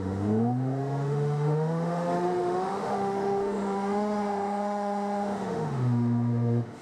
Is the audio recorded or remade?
remade